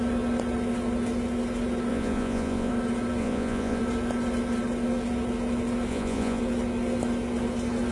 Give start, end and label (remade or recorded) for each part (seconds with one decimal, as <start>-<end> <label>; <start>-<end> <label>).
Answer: 0.0-1.9 recorded; 1.9-2.7 remade; 2.7-3.2 recorded; 3.2-3.8 remade; 3.8-5.9 recorded; 5.9-6.4 remade; 6.4-7.9 recorded

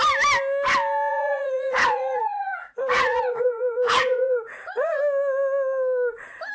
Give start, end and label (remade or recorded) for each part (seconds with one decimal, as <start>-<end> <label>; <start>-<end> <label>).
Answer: 0.0-1.1 recorded; 1.1-5.0 remade; 5.0-6.5 recorded

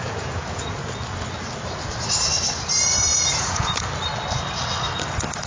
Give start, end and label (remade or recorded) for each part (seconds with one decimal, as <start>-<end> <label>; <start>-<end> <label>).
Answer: 0.0-0.8 remade; 0.8-3.1 recorded; 3.1-3.8 remade; 3.8-5.5 recorded

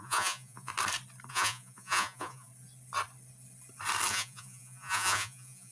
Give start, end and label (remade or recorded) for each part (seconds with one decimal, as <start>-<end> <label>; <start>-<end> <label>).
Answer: 0.0-0.7 remade; 0.7-1.3 recorded; 1.3-2.5 remade; 2.5-4.1 recorded; 4.1-5.7 remade

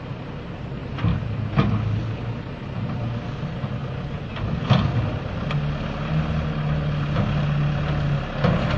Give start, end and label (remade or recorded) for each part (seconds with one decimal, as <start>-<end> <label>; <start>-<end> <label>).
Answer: 0.0-8.8 recorded